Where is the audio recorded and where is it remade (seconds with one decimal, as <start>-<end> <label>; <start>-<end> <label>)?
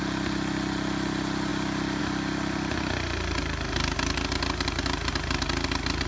0.0-6.1 recorded